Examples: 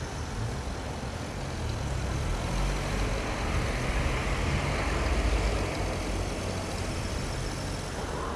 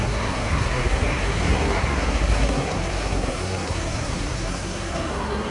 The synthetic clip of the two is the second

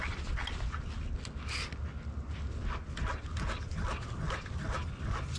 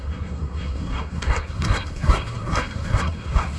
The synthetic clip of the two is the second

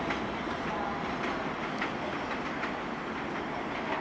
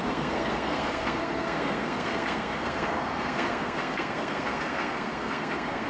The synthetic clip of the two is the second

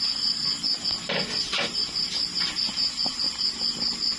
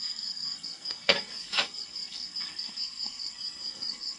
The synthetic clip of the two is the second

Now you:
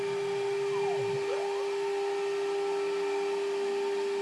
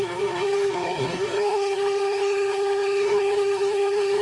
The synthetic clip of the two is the second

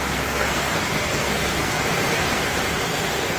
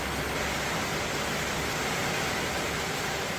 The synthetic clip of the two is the first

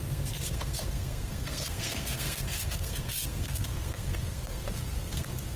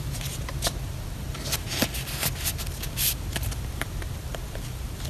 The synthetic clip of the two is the first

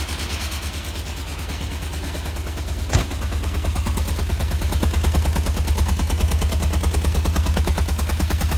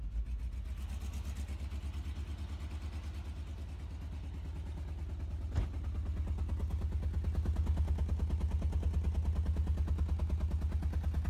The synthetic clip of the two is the first